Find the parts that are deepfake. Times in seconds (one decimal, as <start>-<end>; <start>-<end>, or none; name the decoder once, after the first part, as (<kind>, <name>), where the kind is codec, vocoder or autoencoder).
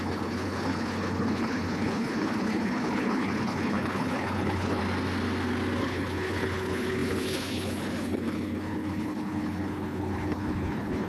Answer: 0.0-4.8 (codec, HILCodec); 5.8-11.1